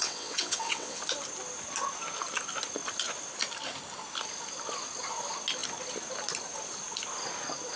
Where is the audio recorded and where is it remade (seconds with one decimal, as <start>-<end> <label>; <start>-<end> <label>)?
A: 0.0-1.0 remade; 1.0-7.8 recorded